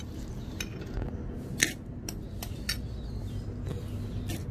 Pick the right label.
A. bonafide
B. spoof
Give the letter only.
A